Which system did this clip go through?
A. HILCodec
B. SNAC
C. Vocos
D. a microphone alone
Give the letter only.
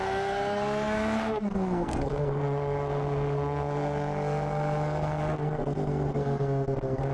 B